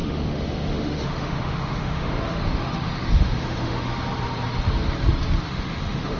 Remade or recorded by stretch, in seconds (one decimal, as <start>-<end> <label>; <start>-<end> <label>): 0.0-3.9 remade; 3.9-5.4 recorded; 5.4-6.2 remade